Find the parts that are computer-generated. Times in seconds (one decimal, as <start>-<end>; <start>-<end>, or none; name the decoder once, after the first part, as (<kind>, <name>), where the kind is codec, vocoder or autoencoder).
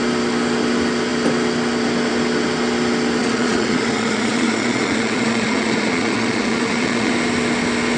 3.2-7.1 (vocoder, Vocos)